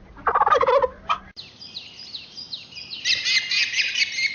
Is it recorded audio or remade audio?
recorded